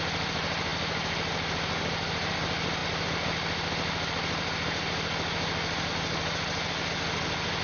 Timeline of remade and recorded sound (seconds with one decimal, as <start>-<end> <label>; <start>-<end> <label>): 0.0-7.6 recorded